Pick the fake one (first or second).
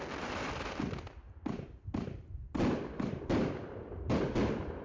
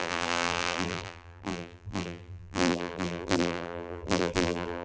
second